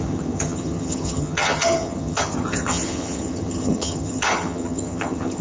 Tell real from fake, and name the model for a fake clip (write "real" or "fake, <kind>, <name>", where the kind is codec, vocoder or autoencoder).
fake, vocoder, HiFi-GAN